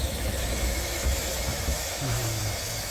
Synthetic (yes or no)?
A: yes